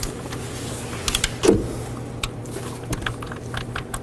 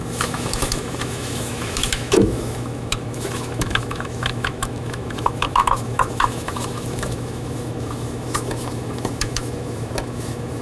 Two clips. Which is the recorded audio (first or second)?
first